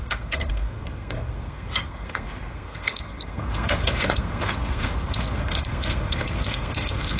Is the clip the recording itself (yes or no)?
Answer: no